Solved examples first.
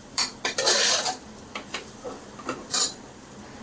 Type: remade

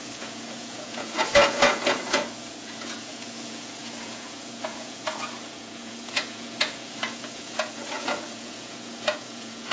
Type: remade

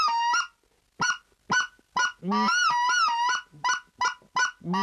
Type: recorded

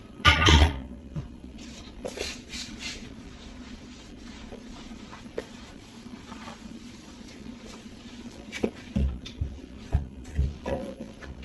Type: remade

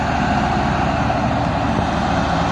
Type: recorded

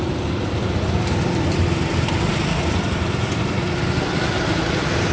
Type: remade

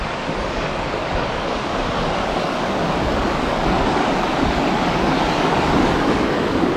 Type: remade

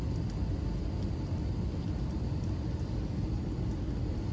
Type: recorded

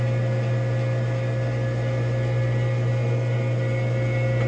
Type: recorded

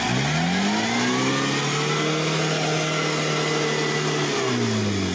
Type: recorded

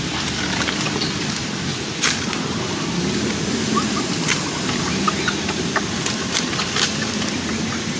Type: remade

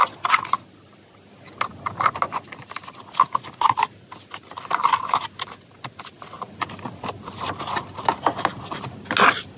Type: recorded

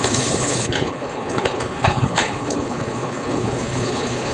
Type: remade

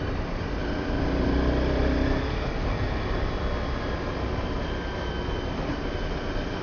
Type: recorded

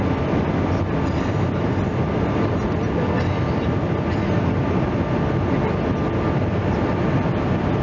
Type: recorded